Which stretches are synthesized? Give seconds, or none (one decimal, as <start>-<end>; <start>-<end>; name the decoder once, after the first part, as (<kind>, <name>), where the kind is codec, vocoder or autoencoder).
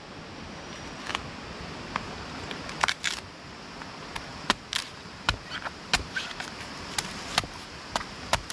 none